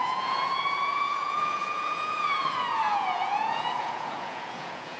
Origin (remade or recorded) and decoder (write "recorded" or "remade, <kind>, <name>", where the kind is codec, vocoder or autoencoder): remade, vocoder, Vocos